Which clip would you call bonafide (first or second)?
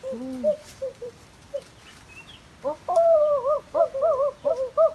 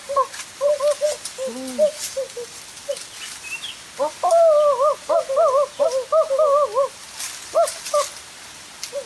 second